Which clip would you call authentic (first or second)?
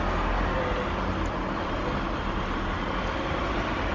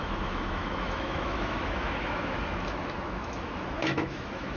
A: first